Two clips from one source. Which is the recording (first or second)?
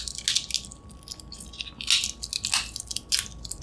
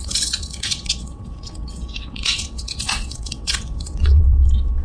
first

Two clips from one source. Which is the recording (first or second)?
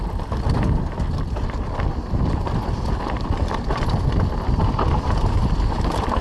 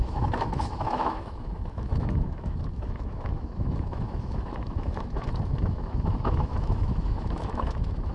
first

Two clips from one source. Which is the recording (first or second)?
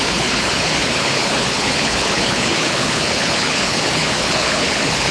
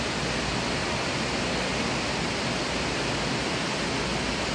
second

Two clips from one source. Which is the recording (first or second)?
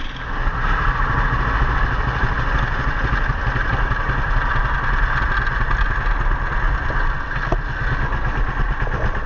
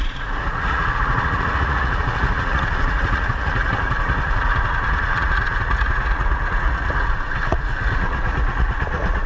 first